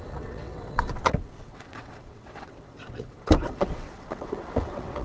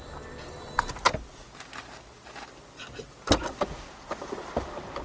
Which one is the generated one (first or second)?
first